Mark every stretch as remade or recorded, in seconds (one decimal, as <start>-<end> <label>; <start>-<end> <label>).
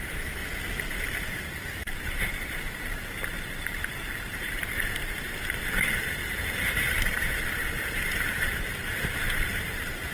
0.0-0.4 remade; 0.4-1.2 recorded; 1.2-10.1 remade